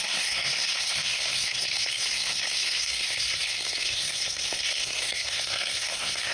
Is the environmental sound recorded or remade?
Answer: remade